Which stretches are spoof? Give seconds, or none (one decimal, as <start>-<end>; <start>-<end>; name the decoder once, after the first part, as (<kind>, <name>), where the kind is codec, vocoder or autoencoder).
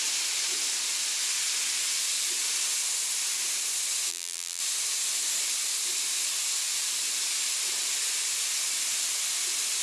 4.1-4.6 (vocoder, BigVGAN v2)